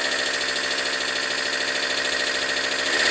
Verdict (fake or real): real